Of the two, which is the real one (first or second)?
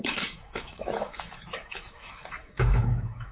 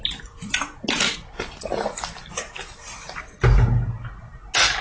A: second